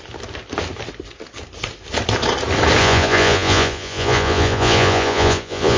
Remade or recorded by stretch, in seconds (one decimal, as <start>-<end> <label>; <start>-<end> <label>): 0.0-2.8 recorded; 2.8-5.8 remade